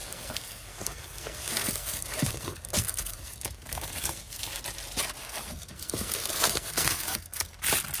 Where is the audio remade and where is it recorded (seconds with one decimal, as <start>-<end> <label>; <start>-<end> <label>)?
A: 0.0-4.6 remade; 4.6-5.2 recorded; 5.2-7.6 remade; 7.6-8.0 recorded

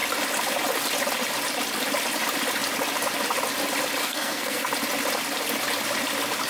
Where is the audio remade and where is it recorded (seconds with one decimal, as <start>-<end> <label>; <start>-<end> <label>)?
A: 0.0-4.0 recorded; 4.0-4.7 remade; 4.7-6.5 recorded

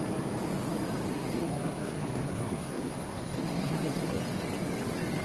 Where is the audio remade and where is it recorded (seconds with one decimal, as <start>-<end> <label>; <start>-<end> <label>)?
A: 0.0-1.1 recorded; 1.1-4.2 remade; 4.2-5.2 recorded

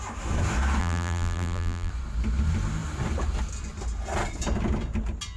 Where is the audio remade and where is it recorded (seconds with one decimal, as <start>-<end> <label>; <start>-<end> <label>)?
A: 0.0-0.8 recorded; 0.8-1.9 remade; 1.9-5.4 recorded